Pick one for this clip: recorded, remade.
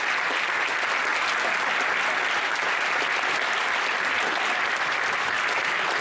recorded